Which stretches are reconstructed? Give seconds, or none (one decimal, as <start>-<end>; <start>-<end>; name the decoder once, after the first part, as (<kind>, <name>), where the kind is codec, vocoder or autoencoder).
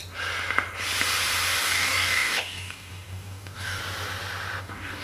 1.6-3.8 (codec, DAC); 4.6-5.0